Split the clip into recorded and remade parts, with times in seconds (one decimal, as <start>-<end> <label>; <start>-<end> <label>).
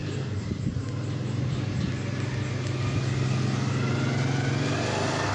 0.0-5.3 recorded